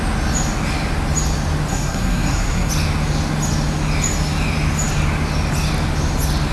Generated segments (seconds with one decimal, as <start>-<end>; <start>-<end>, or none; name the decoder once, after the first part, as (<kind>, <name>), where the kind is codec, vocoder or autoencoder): 1.7-2.7 (codec, SNAC)